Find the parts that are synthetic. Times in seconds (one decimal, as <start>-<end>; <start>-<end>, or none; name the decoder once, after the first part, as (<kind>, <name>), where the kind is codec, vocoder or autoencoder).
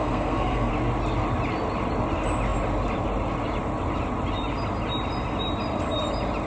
0.0-0.7 (codec, SNAC)